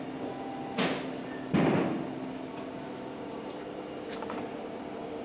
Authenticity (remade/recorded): recorded